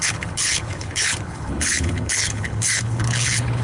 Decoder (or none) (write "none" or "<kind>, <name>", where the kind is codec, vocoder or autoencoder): codec, HILCodec